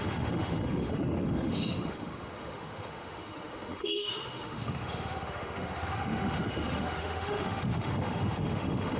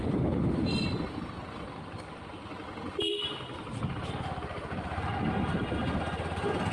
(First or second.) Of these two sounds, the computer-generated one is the first